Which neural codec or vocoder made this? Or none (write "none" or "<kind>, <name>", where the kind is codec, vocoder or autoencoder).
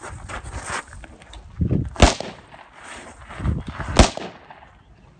none